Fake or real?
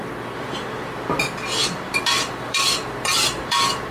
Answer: fake